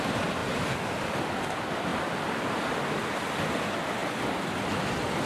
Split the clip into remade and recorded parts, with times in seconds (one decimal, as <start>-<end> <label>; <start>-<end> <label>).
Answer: 0.0-1.9 recorded; 1.9-3.5 remade; 3.5-4.0 recorded; 4.0-4.6 remade; 4.6-5.3 recorded